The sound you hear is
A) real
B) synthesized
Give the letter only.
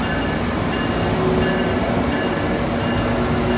A